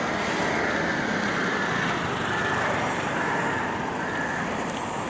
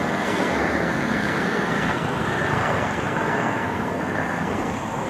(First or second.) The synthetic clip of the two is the second